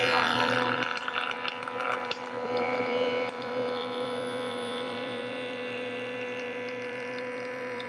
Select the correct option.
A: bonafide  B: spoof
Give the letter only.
B